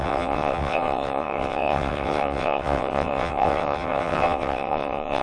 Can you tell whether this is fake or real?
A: fake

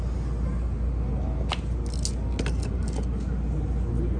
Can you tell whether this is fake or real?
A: real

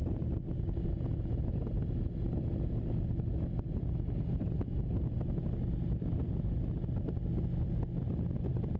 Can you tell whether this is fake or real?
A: real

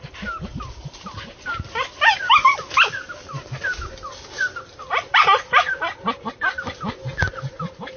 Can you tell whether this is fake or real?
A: real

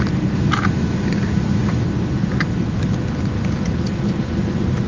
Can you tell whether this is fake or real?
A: real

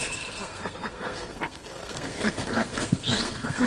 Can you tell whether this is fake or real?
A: fake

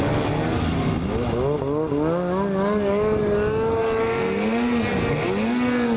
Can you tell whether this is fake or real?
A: real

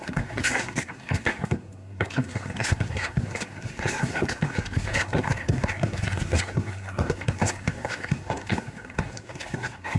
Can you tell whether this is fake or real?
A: fake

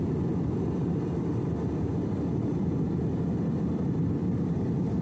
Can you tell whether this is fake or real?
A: fake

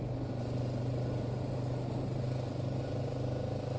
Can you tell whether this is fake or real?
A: real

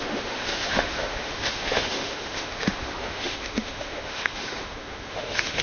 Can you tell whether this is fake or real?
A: fake